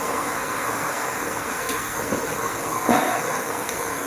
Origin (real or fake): fake